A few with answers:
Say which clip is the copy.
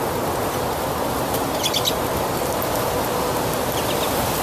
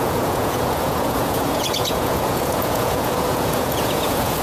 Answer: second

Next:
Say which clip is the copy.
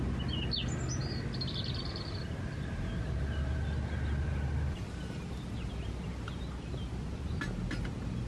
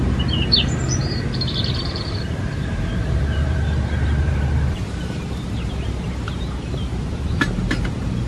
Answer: second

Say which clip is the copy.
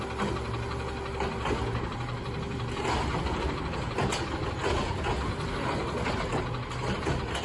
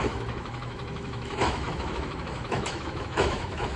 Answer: second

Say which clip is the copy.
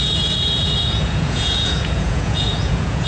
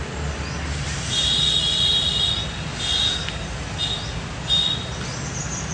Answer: first